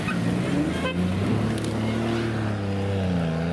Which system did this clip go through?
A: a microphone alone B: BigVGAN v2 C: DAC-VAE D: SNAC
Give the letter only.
A